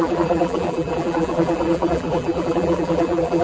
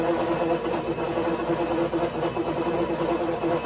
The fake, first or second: first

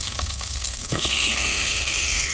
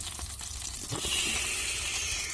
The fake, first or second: first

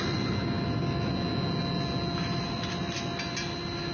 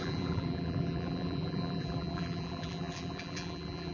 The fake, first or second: second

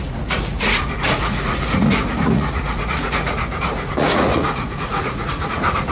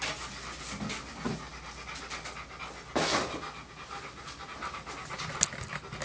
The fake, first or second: first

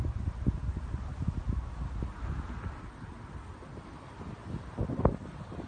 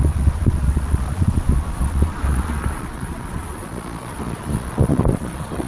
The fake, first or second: second